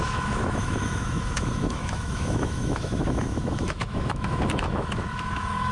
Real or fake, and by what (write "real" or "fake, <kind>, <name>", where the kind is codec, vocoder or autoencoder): fake, autoencoder, DAC-VAE